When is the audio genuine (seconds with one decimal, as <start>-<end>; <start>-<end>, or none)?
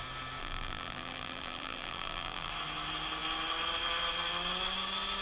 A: 0.0-0.4; 2.5-5.2